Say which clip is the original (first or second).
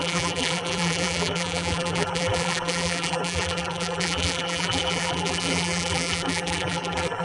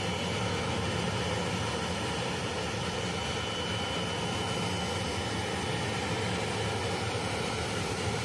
second